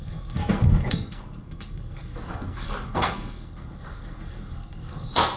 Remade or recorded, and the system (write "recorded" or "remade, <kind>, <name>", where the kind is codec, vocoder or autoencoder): remade, codec, SNAC